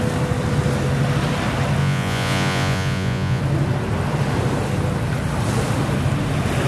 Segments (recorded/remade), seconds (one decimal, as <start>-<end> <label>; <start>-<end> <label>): 0.0-1.8 recorded; 1.8-3.4 remade; 3.4-6.7 recorded